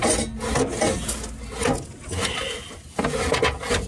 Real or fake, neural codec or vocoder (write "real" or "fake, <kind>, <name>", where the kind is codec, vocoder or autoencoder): real